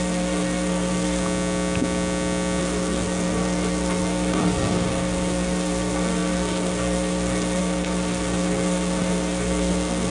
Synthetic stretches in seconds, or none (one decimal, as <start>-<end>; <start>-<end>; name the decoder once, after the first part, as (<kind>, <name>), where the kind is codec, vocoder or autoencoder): 0.0-1.2 (codec, SNAC); 2.6-10.1